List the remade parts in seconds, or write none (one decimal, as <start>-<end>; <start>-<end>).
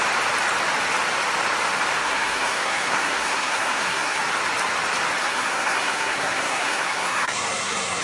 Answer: 2.0-4.2; 5.2-8.0